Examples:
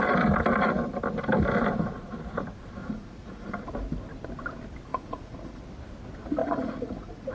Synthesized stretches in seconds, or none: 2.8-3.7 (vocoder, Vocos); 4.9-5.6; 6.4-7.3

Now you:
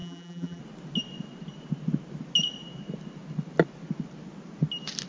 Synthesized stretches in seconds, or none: 0.0-0.6 (vocoder, BigVGAN v2)

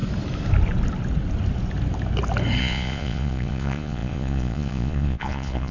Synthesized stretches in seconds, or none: 2.6-5.7 (vocoder, Vocos)

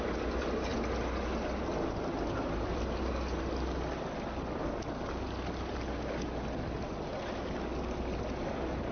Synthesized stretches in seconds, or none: none